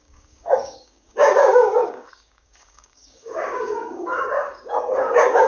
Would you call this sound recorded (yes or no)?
no